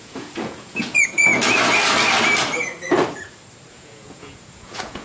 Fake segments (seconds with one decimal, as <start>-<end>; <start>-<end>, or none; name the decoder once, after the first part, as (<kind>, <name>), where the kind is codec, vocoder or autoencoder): 0.0-1.3 (vocoder, Vocos); 3.7-5.0